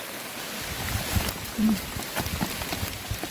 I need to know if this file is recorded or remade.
remade